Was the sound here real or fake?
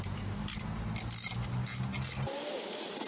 real